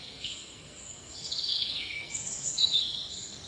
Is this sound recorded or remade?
remade